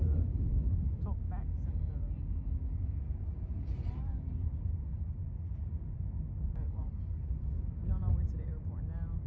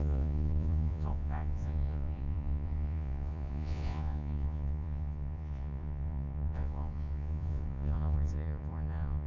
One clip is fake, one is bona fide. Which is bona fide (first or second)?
first